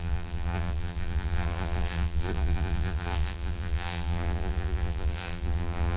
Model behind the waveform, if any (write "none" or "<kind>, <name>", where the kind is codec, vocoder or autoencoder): vocoder, BigVGAN v2